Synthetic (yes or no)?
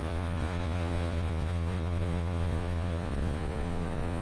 yes